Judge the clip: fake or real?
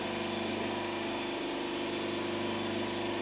real